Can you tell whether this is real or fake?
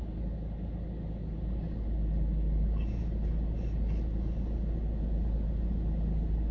real